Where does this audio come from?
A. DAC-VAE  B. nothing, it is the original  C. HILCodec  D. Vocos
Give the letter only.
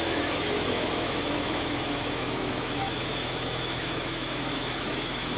A